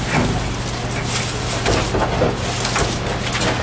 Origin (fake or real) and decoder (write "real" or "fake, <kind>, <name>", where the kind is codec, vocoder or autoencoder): real